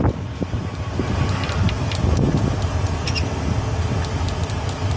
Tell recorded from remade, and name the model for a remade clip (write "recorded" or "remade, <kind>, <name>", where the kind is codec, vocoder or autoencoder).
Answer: recorded